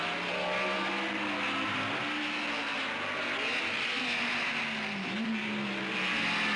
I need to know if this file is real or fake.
real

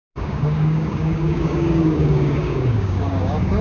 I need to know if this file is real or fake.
fake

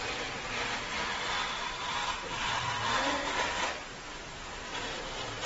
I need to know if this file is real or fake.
fake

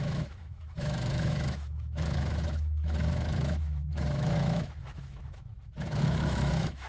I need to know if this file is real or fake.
fake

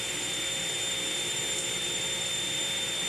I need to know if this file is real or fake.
fake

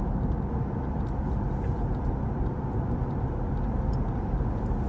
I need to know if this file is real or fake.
real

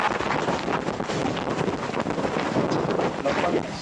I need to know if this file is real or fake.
real